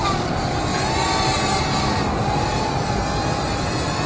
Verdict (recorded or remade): recorded